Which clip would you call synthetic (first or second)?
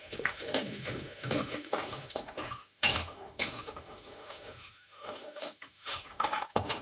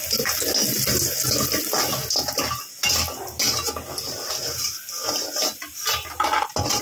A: first